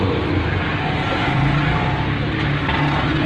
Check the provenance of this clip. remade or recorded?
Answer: recorded